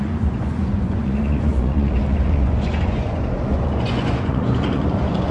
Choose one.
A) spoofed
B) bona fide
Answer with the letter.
A